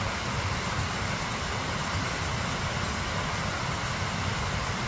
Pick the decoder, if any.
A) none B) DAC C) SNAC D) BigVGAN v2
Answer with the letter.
A